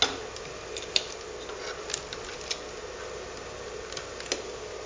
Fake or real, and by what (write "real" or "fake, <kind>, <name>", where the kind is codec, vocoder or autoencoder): real